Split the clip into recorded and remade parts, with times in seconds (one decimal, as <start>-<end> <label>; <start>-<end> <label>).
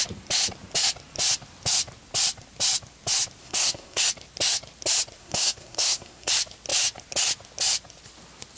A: 0.0-3.4 recorded; 3.4-4.0 remade; 4.0-5.2 recorded; 5.2-6.3 remade; 6.3-8.6 recorded